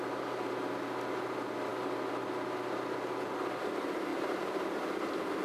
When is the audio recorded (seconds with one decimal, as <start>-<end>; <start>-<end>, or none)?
0.0-4.1; 4.8-5.4

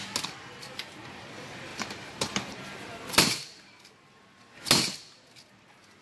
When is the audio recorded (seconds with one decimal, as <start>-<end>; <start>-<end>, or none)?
0.0-1.7; 3.8-6.0

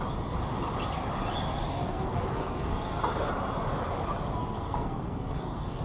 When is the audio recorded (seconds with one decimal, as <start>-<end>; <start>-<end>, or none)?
0.0-1.7; 3.0-4.4

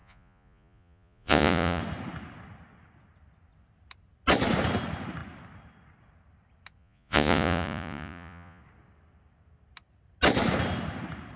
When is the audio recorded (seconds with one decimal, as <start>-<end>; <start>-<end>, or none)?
1.8-6.8; 8.6-11.4

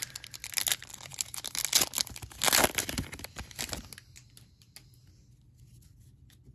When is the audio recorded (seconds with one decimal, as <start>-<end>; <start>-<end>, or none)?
0.0-6.5

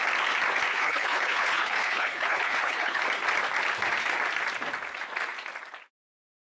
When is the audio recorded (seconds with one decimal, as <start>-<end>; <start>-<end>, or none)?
0.0-0.7; 3.0-6.6

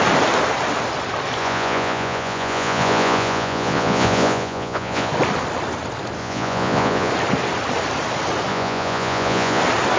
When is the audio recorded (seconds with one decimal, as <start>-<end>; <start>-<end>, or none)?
0.0-1.4; 5.1-6.2; 7.1-8.5; 9.6-10.0

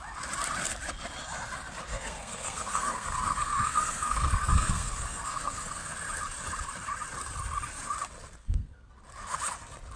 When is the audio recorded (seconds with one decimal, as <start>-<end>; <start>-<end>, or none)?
0.0-1.9; 5.9-8.4; 8.9-10.0